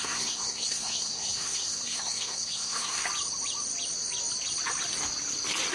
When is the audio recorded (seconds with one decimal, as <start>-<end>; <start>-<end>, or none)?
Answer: 3.0-5.7